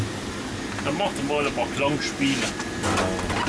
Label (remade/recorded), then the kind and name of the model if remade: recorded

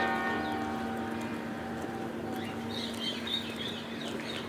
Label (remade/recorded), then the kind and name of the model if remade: recorded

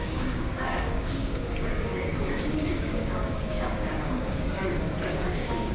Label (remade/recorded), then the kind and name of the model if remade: remade, codec, DAC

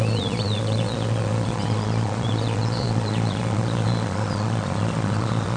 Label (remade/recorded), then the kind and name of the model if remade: remade, vocoder, Vocos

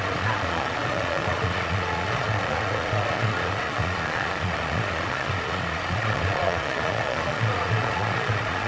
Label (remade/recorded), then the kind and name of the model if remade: remade, vocoder, Vocos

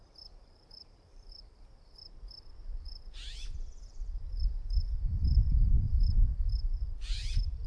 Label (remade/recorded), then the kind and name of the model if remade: remade, vocoder, BigVGAN v2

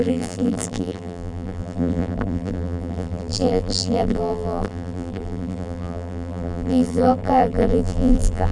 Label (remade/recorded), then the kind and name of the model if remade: remade, vocoder, BigVGAN v2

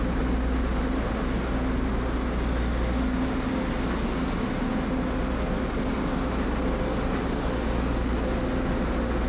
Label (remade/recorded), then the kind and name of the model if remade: recorded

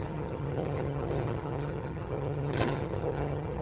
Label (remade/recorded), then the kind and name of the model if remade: remade, vocoder, HiFi-GAN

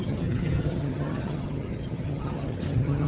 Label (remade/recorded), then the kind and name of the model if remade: remade, vocoder, HiFi-GAN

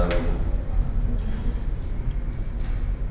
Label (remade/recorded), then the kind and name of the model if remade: recorded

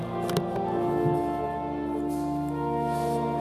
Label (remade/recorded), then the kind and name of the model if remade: recorded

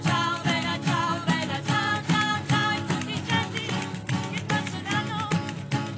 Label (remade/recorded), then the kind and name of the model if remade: recorded